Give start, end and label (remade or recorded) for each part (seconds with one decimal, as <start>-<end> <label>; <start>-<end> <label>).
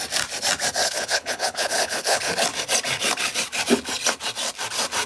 0.0-0.8 recorded; 0.8-2.3 remade; 2.3-5.1 recorded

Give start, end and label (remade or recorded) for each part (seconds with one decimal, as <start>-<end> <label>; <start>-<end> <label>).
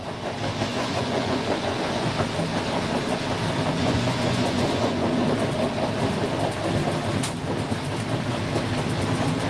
0.0-0.7 recorded; 0.7-2.1 remade; 2.1-3.7 recorded; 3.7-5.3 remade; 5.3-9.5 recorded